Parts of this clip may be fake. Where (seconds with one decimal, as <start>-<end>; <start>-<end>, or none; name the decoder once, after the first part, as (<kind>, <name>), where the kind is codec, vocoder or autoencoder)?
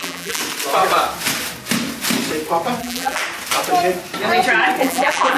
0.0-0.4 (vocoder, BigVGAN v2); 2.8-3.2; 4.8-5.4